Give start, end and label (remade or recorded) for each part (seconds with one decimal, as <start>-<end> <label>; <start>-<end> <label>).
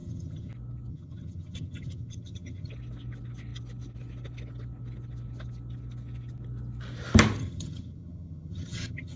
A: 0.0-0.5 remade; 0.5-0.9 recorded; 0.9-2.7 remade; 2.7-7.4 recorded; 7.4-9.2 remade